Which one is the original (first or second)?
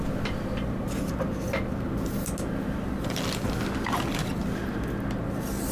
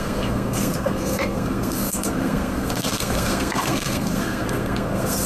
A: first